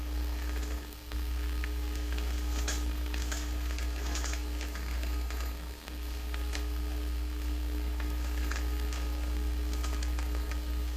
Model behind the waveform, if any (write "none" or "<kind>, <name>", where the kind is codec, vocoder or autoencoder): codec, SNAC